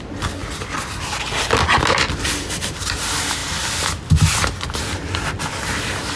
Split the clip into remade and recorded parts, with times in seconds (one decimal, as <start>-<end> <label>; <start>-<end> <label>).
0.0-6.2 recorded